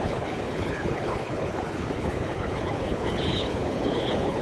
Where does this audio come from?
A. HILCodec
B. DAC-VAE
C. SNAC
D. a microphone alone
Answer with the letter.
A